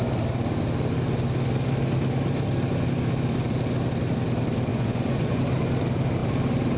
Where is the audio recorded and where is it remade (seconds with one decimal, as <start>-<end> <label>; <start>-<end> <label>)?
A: 0.0-4.7 recorded; 4.7-5.4 remade; 5.4-6.8 recorded